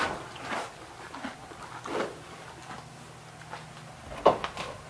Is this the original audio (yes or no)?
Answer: yes